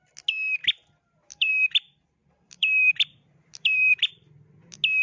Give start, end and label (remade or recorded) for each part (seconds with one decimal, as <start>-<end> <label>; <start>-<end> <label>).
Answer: 0.0-0.6 recorded; 0.6-1.5 remade; 1.5-2.2 recorded; 2.2-4.3 remade; 4.3-5.0 recorded